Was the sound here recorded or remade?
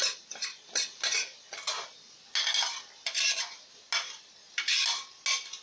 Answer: recorded